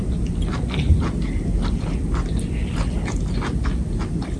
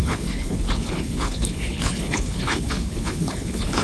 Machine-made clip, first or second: second